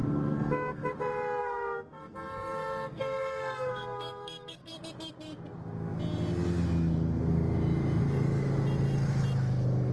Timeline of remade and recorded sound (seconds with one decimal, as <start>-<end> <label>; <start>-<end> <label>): 0.0-0.9 remade; 0.9-1.4 recorded; 1.4-4.7 remade; 4.7-9.9 recorded